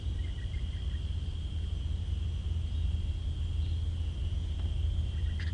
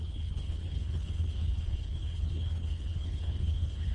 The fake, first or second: second